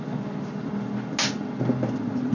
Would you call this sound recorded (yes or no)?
yes